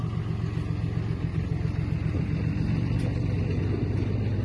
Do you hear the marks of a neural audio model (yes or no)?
no